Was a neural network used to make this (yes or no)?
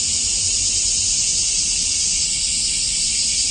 no